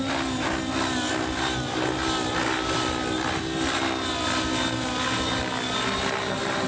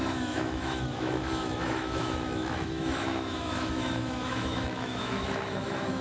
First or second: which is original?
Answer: first